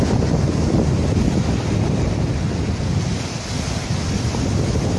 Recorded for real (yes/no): yes